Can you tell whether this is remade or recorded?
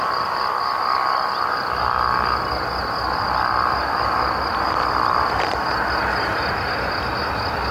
recorded